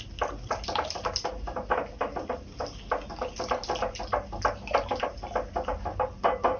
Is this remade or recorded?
recorded